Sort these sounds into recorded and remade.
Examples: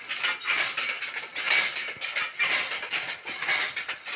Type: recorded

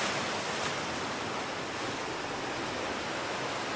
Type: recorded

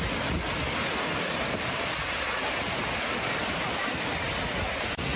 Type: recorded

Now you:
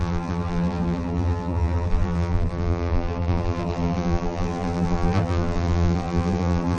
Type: remade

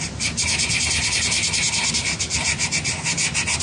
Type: remade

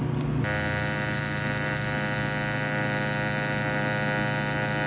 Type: recorded